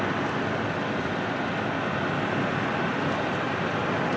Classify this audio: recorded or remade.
recorded